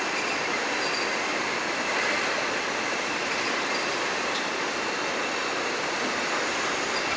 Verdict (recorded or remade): recorded